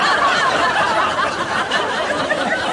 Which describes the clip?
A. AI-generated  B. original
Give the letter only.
B